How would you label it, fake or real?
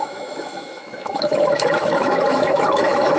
fake